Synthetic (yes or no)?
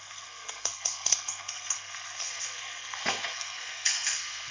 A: yes